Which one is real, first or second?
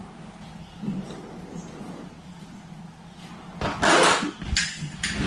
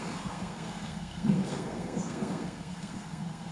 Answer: first